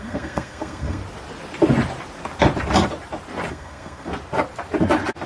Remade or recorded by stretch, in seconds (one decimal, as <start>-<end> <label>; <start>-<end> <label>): 0.0-1.0 remade; 1.0-3.5 recorded; 3.5-4.1 remade; 4.1-5.3 recorded